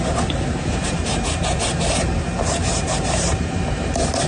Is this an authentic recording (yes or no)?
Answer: no